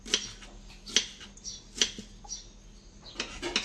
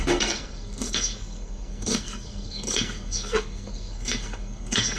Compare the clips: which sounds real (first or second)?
first